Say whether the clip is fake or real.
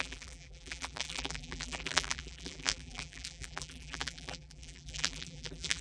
fake